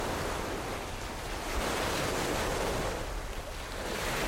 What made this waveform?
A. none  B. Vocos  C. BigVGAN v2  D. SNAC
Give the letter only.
A